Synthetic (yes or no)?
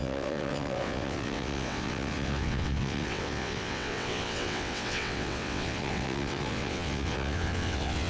yes